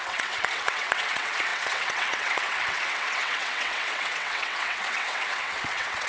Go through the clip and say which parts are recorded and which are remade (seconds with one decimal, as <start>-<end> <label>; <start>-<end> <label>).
0.0-6.1 remade